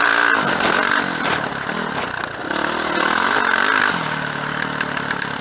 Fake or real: real